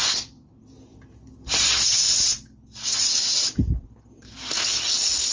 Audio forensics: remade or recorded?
recorded